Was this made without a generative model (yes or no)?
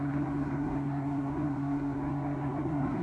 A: no